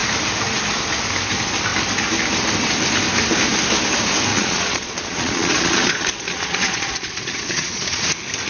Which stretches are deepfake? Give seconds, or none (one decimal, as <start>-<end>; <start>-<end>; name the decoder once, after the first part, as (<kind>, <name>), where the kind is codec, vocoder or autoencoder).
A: 4.3-8.1 (vocoder, Vocos)